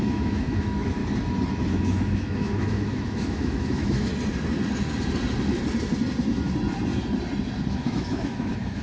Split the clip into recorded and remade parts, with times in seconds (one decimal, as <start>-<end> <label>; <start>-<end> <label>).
0.0-1.0 remade; 1.0-1.7 recorded; 1.7-4.1 remade; 4.1-7.7 recorded; 7.7-8.8 remade